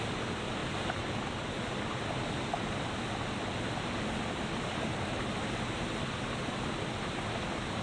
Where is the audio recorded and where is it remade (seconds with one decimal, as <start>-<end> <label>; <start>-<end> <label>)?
0.0-7.8 recorded